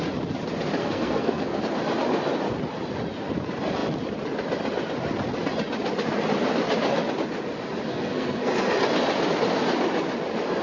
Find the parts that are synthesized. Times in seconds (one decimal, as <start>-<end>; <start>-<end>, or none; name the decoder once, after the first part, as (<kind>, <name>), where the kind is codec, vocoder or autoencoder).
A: 0.8-1.6 (codec, SNAC); 7.9-8.5